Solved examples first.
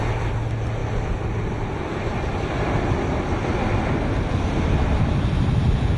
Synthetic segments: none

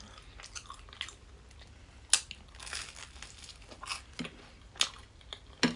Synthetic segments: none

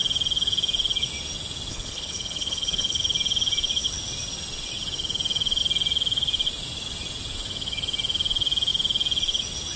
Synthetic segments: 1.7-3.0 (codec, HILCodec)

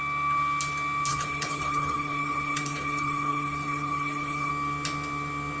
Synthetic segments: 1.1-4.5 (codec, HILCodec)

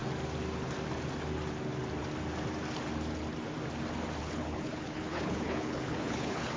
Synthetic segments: 4.2-6.6 (codec, HILCodec)

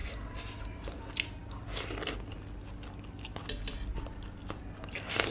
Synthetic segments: none